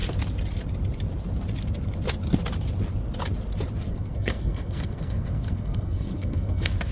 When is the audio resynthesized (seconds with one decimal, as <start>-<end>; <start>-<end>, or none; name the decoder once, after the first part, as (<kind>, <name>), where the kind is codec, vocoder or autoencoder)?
3.9-6.9 (codec, SNAC)